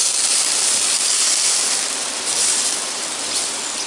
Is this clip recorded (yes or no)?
no